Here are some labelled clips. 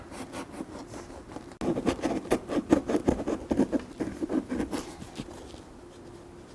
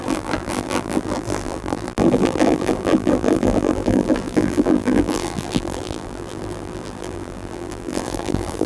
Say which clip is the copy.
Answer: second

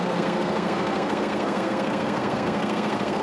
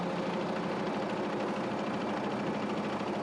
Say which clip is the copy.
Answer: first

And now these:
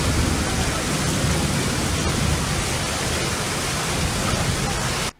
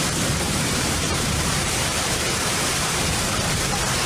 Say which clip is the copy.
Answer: second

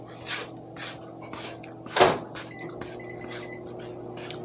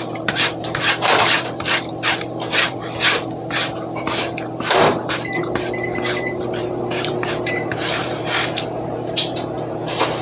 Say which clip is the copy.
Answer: second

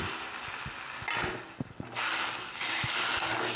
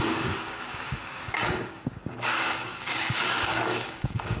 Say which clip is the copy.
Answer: second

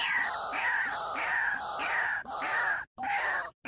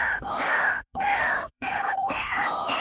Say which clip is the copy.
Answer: second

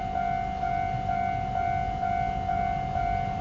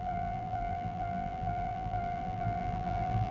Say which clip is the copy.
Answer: second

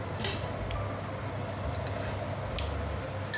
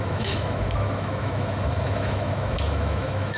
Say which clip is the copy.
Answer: second